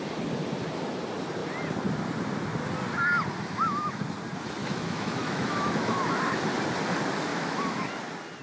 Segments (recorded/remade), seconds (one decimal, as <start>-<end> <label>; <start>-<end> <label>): 0.0-3.4 recorded; 3.4-4.0 remade; 4.0-4.6 recorded; 4.6-6.4 remade; 6.4-7.3 recorded; 7.3-7.9 remade; 7.9-8.4 recorded